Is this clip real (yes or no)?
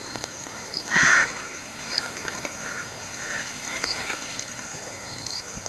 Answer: no